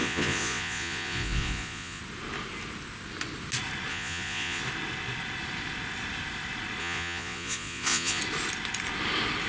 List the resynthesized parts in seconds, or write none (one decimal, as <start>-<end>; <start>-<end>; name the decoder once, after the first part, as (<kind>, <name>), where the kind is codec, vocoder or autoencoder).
0.0-2.0 (vocoder, Vocos); 3.9-4.6; 6.8-8.2